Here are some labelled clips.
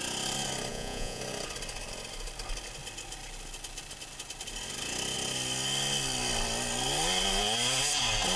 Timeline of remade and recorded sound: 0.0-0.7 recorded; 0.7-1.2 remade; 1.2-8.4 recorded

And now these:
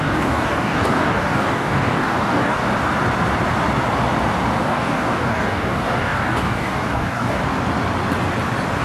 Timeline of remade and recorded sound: 0.0-2.6 remade; 2.6-4.6 recorded; 4.6-7.4 remade; 7.4-8.8 recorded

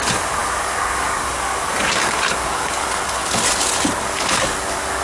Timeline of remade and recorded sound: 0.0-3.2 remade; 3.2-4.0 recorded; 4.0-5.0 remade

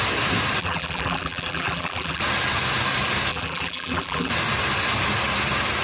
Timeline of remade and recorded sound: 0.0-0.6 recorded; 0.6-2.2 remade; 2.2-3.3 recorded; 3.3-4.3 remade; 4.3-5.8 recorded

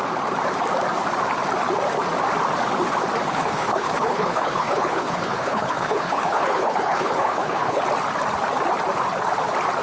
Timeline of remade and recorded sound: 0.0-3.3 recorded; 3.3-7.8 remade; 7.8-9.8 recorded

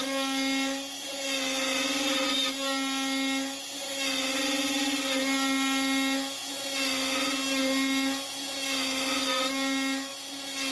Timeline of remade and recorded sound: 0.0-10.7 recorded